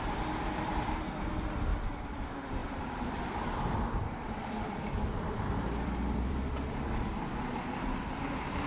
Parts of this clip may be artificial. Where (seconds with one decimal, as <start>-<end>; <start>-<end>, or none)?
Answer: 2.6-7.6